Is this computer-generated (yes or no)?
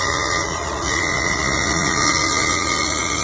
yes